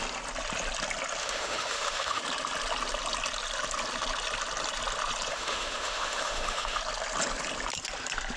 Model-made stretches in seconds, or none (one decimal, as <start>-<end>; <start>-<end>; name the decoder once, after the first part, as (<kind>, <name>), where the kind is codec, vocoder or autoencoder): 1.2-2.2 (autoencoder, DAC-VAE); 5.3-6.8